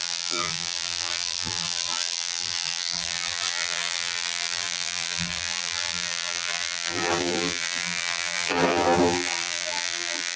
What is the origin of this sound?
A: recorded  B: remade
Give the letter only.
B